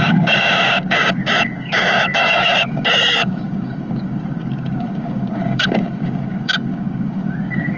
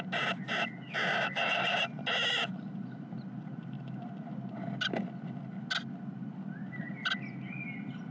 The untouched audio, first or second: second